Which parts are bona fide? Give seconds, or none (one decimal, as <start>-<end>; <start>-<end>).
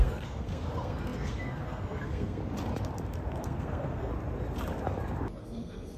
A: 2.4-3.4; 4.1-5.4